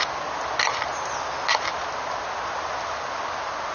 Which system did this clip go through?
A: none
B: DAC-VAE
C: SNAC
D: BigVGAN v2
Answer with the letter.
A